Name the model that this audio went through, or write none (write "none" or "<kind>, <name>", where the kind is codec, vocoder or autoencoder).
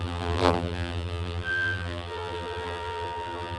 vocoder, BigVGAN v2